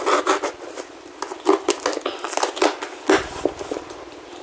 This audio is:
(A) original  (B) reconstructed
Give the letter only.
A